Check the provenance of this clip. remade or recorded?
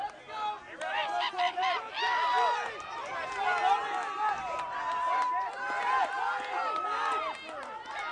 recorded